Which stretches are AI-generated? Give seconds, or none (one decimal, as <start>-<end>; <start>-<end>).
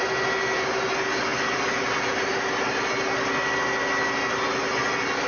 none